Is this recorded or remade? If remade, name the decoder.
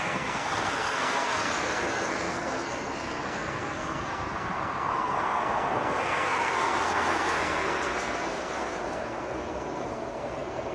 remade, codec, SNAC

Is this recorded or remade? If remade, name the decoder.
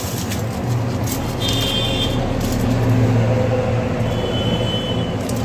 recorded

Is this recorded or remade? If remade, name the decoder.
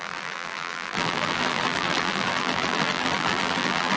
remade, vocoder, BigVGAN v2